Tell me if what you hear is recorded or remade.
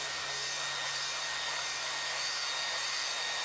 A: recorded